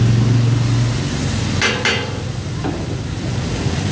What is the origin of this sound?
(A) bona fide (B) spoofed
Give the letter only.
A